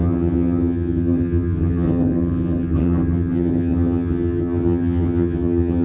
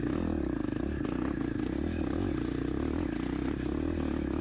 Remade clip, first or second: first